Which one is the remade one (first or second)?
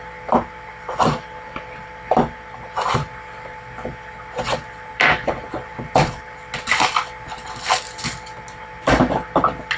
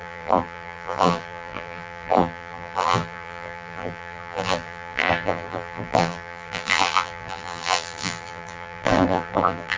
second